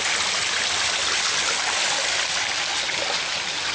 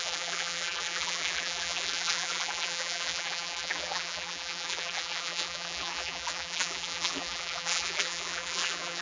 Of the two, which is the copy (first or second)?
second